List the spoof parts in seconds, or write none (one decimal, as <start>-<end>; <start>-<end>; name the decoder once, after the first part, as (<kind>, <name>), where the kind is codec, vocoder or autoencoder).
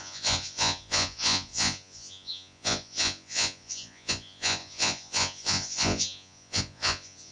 0.0-7.3 (vocoder, Vocos)